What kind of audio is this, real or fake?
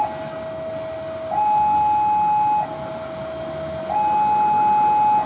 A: real